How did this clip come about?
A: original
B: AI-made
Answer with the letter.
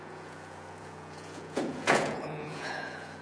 B